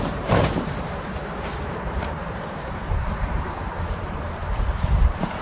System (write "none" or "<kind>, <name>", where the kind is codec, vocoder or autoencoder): vocoder, BigVGAN v2